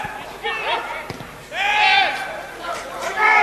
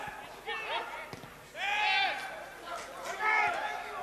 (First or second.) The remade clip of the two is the first